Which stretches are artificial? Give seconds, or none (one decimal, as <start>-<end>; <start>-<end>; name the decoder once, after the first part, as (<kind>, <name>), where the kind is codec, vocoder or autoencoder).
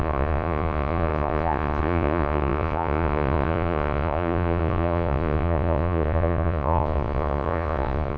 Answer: 0.0-8.2 (vocoder, Vocos)